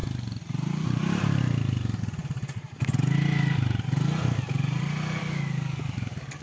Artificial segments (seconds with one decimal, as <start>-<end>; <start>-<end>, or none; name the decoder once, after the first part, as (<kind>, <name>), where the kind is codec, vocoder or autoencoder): 5.2-6.4 (codec, DAC)